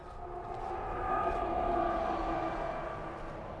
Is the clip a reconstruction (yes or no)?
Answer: no